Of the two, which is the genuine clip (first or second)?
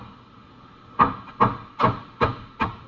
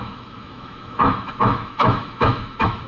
first